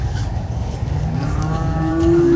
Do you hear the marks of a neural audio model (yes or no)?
yes